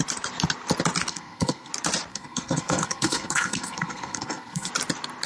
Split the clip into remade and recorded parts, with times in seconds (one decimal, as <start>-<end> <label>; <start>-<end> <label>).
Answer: 0.0-1.1 recorded; 1.1-1.7 remade; 1.7-2.1 recorded; 2.1-4.7 remade; 4.7-5.3 recorded